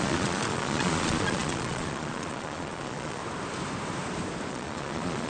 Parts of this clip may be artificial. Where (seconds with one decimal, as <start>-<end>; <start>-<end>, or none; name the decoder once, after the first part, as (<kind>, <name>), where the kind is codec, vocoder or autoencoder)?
0.0-3.2 (vocoder, Vocos); 4.5-5.3